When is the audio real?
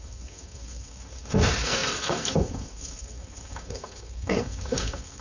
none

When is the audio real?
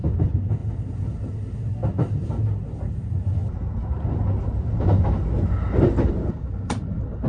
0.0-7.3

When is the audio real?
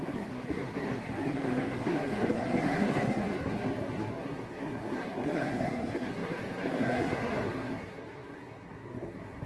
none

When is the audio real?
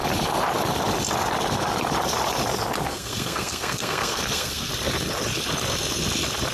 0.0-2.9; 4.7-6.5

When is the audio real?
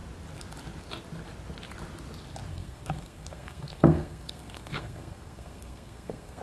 0.0-2.5